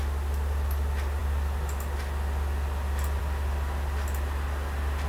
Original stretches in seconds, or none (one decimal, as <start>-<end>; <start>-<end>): 0.0-5.1